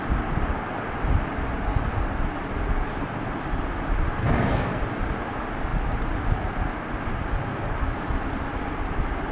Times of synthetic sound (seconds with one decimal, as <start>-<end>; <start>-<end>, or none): 4.2-4.8